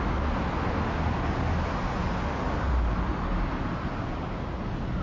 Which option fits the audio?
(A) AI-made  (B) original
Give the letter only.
B